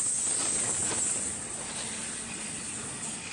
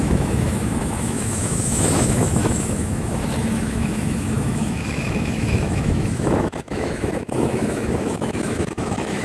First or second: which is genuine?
first